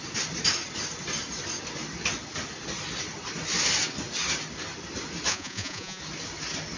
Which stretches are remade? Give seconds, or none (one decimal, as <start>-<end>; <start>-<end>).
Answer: 5.3-6.0